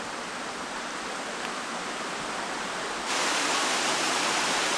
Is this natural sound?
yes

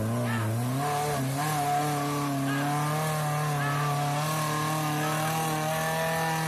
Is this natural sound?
yes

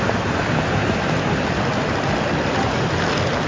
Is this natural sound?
yes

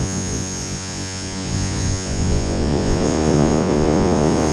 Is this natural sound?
no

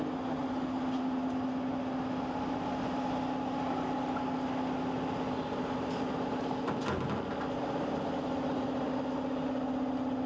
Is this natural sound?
yes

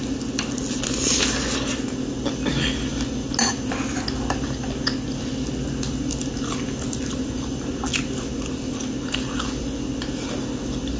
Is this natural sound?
yes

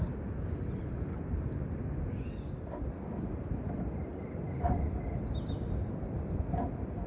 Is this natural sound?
yes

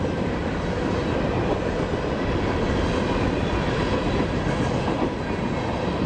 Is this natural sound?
yes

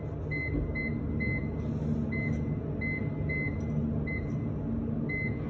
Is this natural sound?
yes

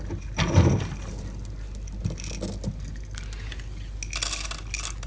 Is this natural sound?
yes